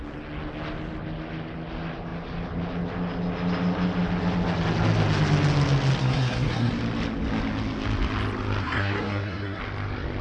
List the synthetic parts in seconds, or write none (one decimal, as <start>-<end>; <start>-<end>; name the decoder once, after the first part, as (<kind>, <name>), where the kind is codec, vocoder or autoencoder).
6.0-6.7 (codec, SNAC); 8.6-9.6